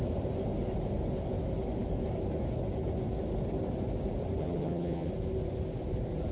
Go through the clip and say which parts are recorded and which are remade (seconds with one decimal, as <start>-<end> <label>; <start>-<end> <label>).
0.0-4.4 recorded; 4.4-5.1 remade; 5.1-6.3 recorded